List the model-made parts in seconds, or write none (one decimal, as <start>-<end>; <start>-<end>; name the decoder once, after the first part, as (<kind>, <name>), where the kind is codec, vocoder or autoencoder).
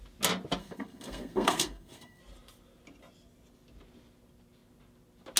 0.6-2.2 (codec, SNAC)